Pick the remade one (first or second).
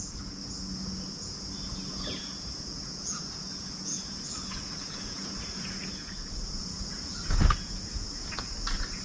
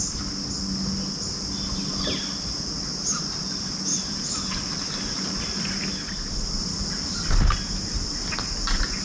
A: first